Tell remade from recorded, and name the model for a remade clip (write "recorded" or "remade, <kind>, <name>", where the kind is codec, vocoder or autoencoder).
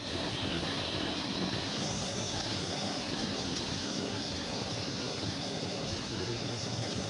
remade, codec, SNAC